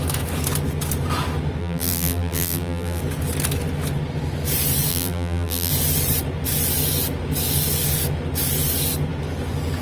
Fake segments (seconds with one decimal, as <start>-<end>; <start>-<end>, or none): 1.6-3.0; 4.9-5.7